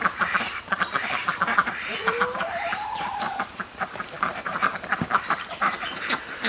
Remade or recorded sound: remade